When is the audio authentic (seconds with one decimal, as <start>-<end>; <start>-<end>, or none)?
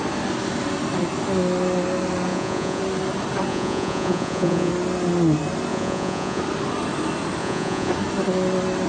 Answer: 0.0-2.3; 2.8-3.5; 4.7-5.7; 6.4-7.4; 7.9-8.9